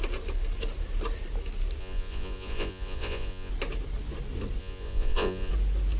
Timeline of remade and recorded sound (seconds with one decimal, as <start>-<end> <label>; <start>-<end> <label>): 0.0-1.8 recorded; 1.8-3.5 remade; 3.5-4.6 recorded; 4.6-5.5 remade; 5.5-6.0 recorded